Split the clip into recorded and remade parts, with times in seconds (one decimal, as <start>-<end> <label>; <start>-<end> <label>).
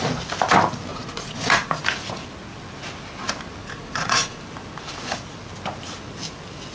0.0-0.9 recorded; 0.9-1.8 remade; 1.8-3.6 recorded; 3.6-4.4 remade; 4.4-6.7 recorded